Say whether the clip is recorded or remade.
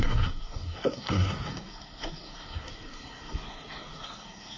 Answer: remade